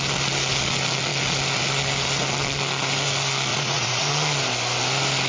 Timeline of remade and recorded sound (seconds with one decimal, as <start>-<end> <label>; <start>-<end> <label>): 0.0-3.5 recorded; 3.5-4.1 remade; 4.1-5.3 recorded